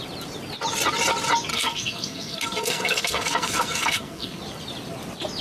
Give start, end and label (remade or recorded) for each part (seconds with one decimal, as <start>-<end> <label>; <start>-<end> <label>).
0.0-1.5 recorded; 1.5-4.4 remade; 4.4-5.4 recorded

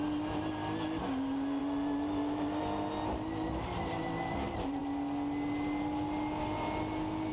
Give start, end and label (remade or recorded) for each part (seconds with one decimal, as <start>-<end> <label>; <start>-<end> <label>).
0.0-7.3 recorded

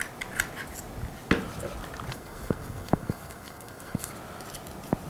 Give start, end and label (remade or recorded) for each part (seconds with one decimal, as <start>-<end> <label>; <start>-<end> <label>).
0.0-2.1 recorded; 2.1-4.1 remade; 4.1-5.1 recorded

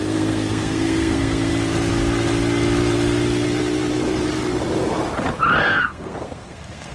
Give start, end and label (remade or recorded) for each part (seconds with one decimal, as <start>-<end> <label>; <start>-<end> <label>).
0.0-1.5 remade; 1.5-5.6 recorded; 5.6-6.9 remade

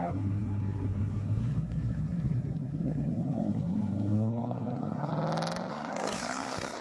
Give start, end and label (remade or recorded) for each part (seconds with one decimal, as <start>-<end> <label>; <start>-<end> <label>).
0.0-5.1 remade; 5.1-5.7 recorded; 5.7-6.8 remade